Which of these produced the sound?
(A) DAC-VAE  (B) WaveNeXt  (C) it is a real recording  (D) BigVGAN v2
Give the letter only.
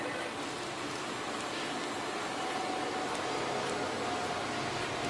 C